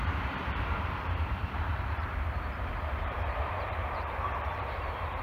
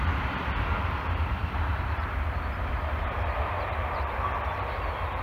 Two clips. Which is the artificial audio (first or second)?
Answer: first